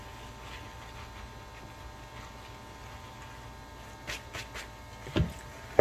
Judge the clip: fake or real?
real